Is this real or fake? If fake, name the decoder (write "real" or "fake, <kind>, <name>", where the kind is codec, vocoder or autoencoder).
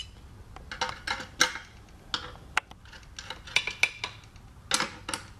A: real